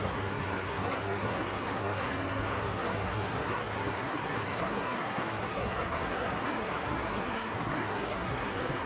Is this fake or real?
fake